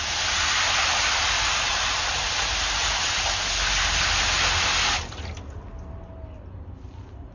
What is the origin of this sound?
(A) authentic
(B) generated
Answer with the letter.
A